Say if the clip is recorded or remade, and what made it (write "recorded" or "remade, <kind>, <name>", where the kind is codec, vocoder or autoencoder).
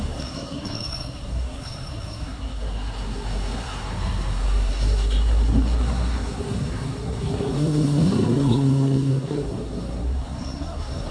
remade, codec, SNAC